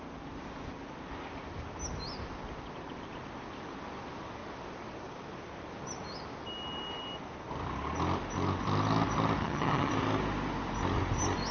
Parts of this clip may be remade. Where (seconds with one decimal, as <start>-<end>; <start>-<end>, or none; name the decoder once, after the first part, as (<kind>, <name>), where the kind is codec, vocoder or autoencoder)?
9.4-9.9 (vocoder, HiFi-GAN)